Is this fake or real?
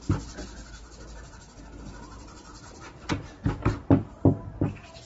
real